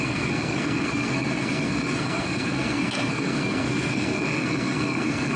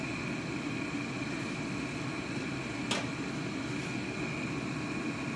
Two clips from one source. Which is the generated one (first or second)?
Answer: first